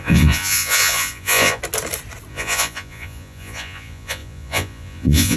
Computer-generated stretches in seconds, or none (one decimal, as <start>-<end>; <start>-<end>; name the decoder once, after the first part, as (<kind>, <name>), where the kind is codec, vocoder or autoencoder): 0.0-1.6 (vocoder, Vocos); 2.3-5.4